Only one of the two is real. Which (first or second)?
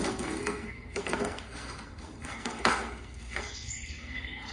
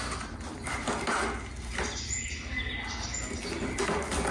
second